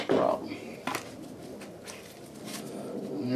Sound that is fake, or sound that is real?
real